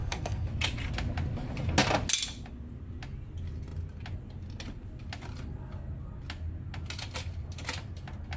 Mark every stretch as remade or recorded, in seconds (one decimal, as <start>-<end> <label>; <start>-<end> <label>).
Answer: 0.0-0.5 remade; 0.5-8.4 recorded